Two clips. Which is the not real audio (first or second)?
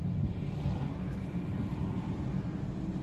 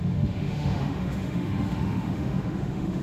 second